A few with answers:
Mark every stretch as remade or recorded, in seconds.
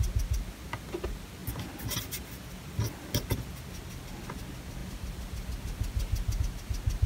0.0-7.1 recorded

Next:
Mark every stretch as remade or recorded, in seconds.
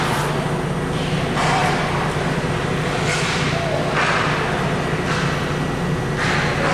0.0-6.7 recorded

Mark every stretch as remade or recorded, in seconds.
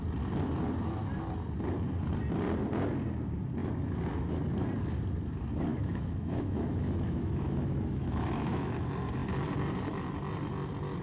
0.0-5.7 recorded; 5.7-8.7 remade; 8.7-11.0 recorded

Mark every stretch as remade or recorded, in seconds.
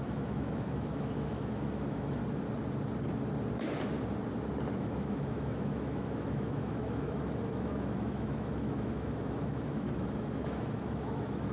0.0-2.2 remade; 2.2-4.8 recorded; 4.8-11.5 remade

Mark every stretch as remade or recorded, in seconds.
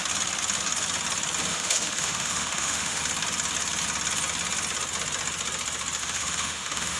0.0-1.5 recorded; 1.5-3.0 remade; 3.0-6.0 recorded; 6.0-7.0 remade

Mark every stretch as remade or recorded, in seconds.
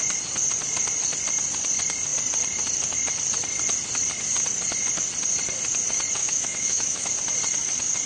0.0-6.2 recorded; 6.2-7.1 remade; 7.1-8.1 recorded